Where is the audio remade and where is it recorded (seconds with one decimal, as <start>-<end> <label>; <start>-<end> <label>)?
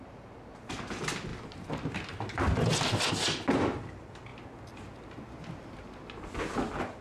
0.0-7.0 recorded